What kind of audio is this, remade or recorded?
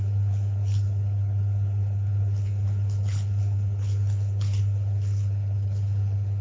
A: remade